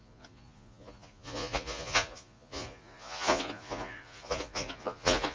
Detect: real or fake fake